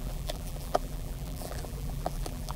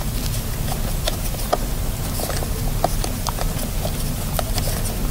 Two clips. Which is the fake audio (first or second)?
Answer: first